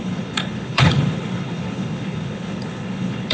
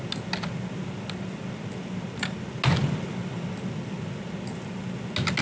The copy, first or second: first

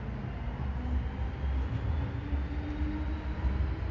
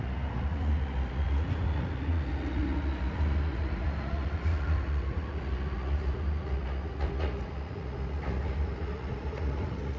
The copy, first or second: second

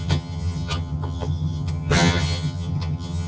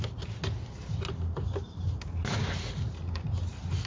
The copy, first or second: first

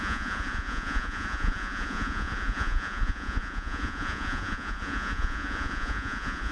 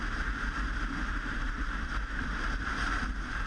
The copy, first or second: first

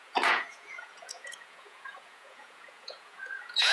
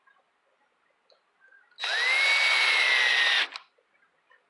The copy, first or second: first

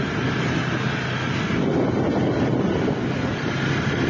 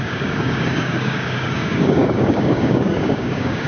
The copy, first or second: second